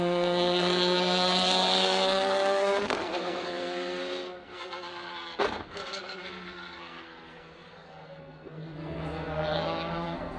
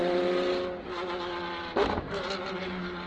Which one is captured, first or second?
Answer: second